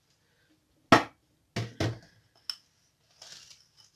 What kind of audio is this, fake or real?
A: real